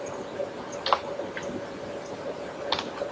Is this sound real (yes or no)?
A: yes